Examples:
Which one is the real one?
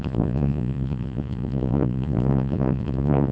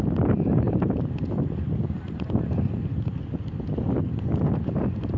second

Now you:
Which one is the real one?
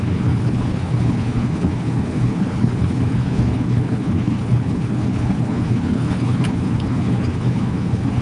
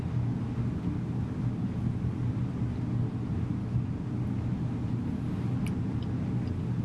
second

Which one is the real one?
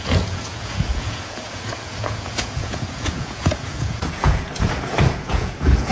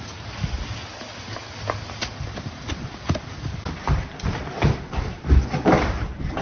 second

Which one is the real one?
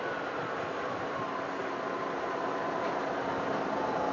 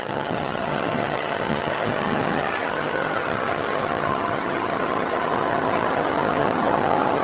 first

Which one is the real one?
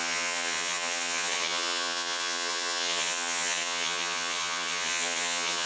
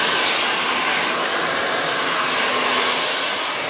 second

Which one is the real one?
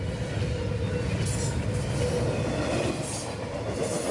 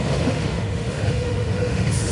first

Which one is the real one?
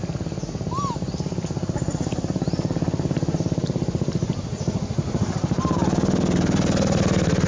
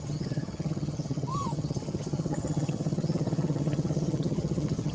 first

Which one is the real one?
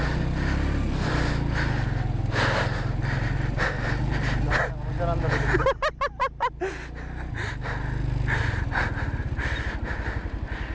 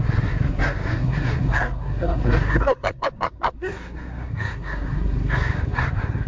first